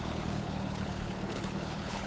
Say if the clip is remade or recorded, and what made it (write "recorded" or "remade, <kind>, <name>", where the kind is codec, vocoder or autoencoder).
remade, codec, HILCodec